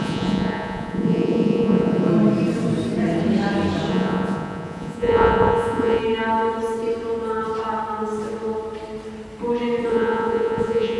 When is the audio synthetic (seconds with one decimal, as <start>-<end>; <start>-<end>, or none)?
0.0-2.1; 3.9-6.0; 9.9-11.0